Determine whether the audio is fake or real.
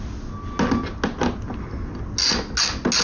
real